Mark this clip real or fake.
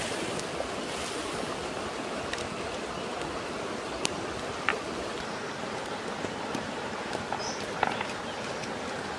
real